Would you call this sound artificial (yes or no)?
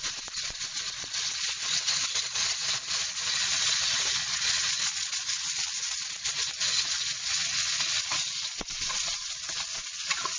yes